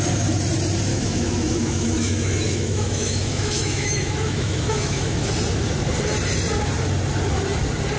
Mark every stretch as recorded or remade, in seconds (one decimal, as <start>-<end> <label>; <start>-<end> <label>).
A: 0.0-0.9 recorded; 0.9-5.3 remade; 5.3-8.0 recorded